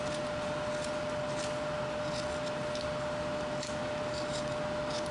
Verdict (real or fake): real